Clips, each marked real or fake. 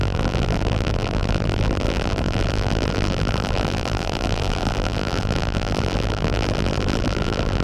fake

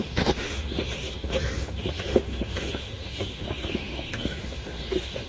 fake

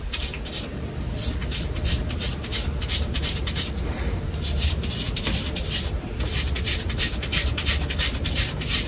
fake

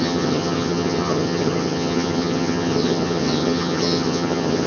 fake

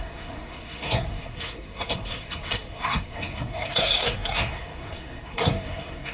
fake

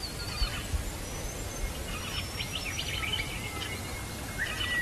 real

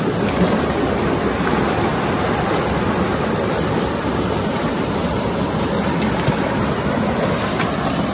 real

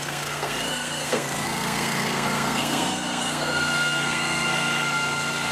fake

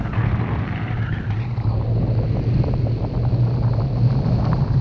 real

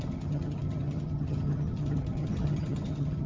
fake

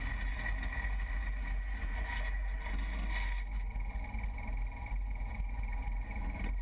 real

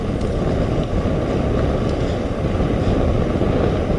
real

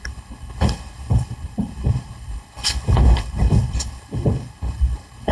fake